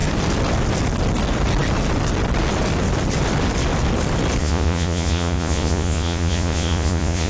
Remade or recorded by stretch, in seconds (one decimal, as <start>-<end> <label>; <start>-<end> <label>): 0.0-4.4 recorded; 4.4-7.3 remade